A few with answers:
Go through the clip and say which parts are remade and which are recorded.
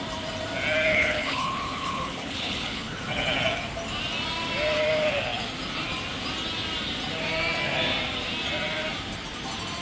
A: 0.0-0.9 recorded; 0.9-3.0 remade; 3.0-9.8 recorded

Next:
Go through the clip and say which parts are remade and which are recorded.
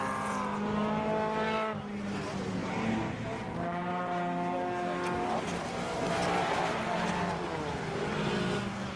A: 0.0-9.0 recorded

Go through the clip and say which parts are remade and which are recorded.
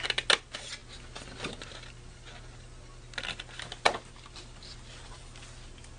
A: 0.0-6.0 recorded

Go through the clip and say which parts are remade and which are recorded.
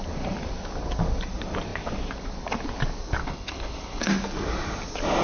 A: 0.0-3.2 recorded; 3.2-4.0 remade; 4.0-5.2 recorded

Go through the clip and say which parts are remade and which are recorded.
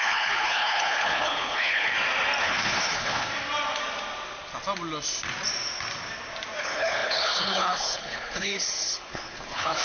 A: 0.0-1.9 remade; 1.9-2.4 recorded; 2.4-3.3 remade; 3.3-6.6 recorded; 6.6-9.8 remade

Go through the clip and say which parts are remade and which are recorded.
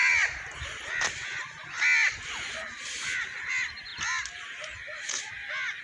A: 0.0-5.8 recorded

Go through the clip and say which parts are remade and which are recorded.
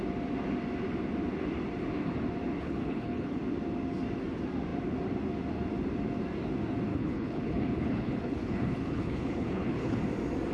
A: 0.0-2.6 recorded; 2.6-3.4 remade; 3.4-6.9 recorded; 6.9-10.0 remade; 10.0-10.5 recorded